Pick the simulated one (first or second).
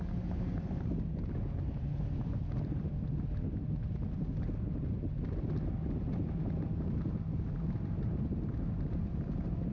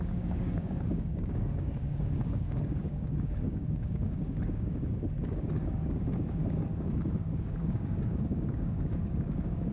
second